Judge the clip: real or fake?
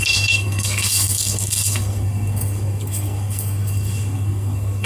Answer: fake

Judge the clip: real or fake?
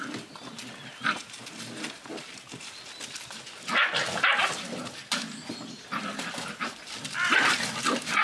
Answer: real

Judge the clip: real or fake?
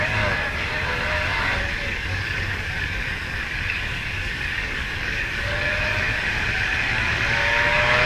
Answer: fake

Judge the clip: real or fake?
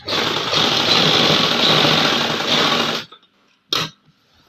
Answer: real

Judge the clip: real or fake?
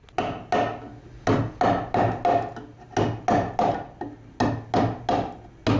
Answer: real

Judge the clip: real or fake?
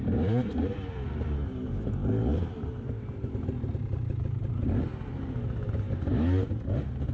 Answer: fake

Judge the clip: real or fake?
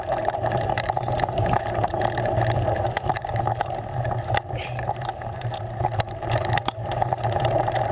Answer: fake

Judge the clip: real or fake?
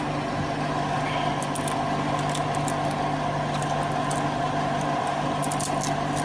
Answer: real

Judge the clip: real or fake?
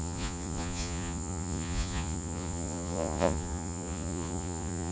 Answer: fake